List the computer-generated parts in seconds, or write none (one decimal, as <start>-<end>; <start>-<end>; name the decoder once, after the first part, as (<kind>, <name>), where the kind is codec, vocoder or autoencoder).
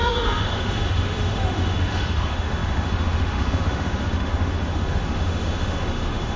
0.0-6.4 (autoencoder, DAC-VAE)